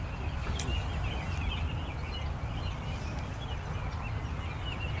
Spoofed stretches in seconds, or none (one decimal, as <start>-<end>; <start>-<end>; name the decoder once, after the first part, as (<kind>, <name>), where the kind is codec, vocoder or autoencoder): none